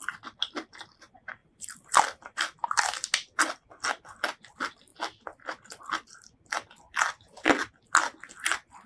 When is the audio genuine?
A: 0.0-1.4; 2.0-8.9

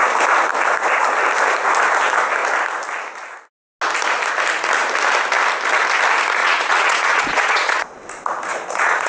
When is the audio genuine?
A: 0.0-6.4; 7.8-8.5